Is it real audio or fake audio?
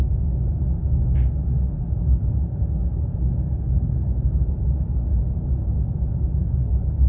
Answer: real